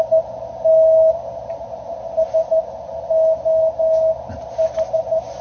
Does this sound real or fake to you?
real